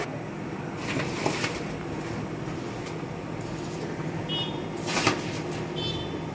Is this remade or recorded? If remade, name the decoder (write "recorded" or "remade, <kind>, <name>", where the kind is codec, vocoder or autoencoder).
recorded